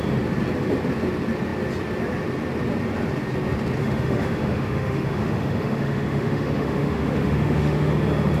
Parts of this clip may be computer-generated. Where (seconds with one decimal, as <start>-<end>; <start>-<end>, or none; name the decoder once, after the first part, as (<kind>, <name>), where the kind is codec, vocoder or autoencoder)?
3.8-7.9 (autoencoder, DAC-VAE)